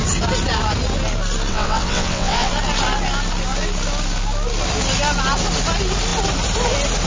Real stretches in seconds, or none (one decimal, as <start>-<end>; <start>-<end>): 0.0-1.5; 2.5-7.1